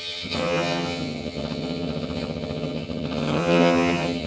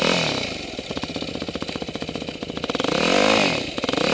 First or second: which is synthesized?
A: first